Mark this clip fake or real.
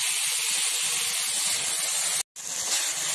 real